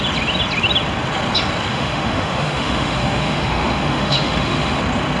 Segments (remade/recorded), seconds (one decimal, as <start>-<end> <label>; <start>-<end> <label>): 0.0-1.7 recorded; 1.7-4.8 remade; 4.8-5.2 recorded